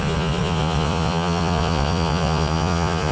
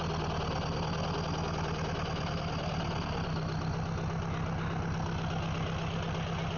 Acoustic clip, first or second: second